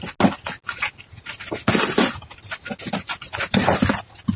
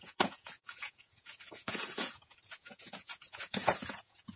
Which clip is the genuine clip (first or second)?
first